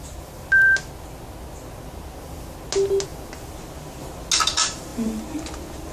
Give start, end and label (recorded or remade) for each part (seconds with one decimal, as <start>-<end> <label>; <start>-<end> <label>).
0.0-5.9 recorded